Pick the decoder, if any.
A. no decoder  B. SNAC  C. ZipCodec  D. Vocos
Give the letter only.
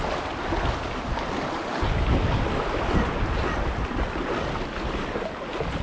A